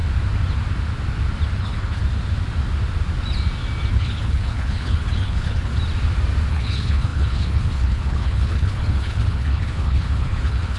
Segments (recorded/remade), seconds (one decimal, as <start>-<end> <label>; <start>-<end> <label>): 0.0-1.6 recorded; 1.6-2.0 remade; 2.0-3.9 recorded; 3.9-5.7 remade; 5.7-6.5 recorded; 6.5-10.8 remade